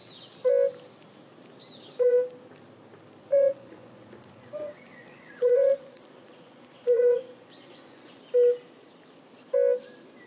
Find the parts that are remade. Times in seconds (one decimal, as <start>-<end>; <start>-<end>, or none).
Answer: 3.3-8.2